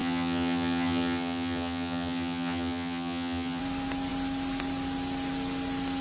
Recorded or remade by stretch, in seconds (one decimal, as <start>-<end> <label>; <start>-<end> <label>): 0.0-3.6 remade; 3.6-6.0 recorded